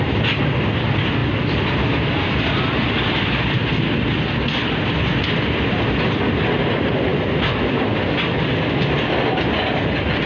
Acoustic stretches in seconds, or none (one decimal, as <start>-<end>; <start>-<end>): 0.0-10.3